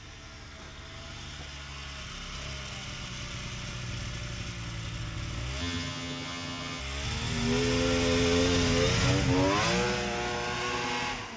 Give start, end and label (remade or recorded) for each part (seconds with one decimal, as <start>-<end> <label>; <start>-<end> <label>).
0.0-5.6 recorded; 5.6-6.8 remade; 6.8-11.4 recorded